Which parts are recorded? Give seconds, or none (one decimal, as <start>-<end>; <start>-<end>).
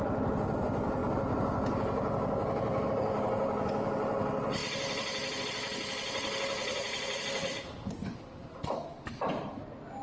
0.0-6.6; 7.2-10.0